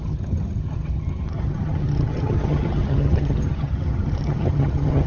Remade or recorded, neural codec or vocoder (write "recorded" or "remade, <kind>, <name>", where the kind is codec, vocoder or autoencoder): remade, vocoder, HiFi-GAN